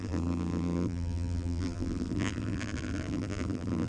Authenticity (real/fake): fake